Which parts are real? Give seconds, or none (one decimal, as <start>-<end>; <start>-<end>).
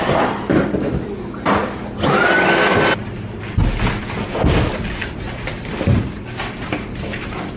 0.0-7.6